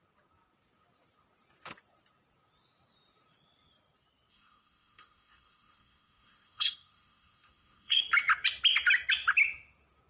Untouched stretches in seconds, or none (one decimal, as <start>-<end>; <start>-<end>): 0.0-4.3; 8.0-10.1